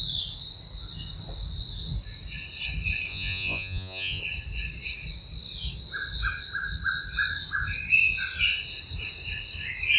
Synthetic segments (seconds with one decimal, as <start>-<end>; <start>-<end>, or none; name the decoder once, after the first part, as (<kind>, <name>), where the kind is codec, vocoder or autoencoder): 3.1-4.2 (vocoder, Vocos)